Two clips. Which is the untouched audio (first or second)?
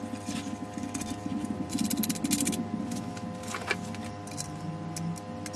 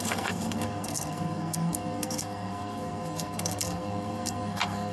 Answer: first